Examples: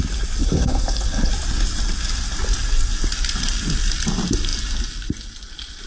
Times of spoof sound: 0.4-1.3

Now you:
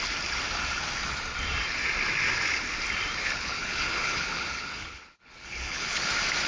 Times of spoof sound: 3.2-6.0

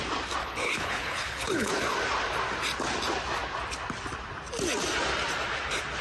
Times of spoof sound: 0.4-1.8

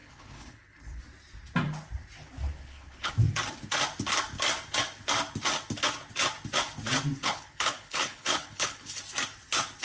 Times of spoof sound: 0.0-1.0; 2.5-3.1; 7.2-9.0

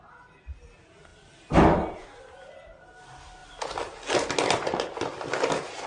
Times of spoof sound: none